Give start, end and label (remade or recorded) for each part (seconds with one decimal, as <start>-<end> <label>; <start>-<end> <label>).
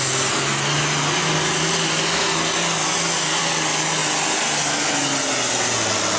0.0-6.2 recorded